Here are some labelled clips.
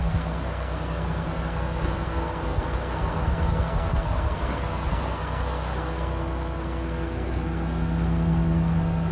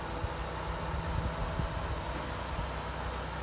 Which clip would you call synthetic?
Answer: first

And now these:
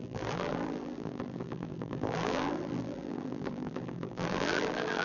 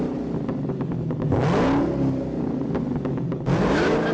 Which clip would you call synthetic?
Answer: first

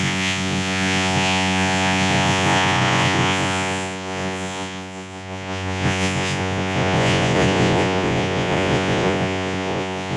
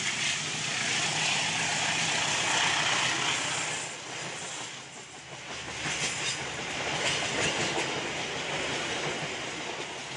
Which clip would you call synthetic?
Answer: first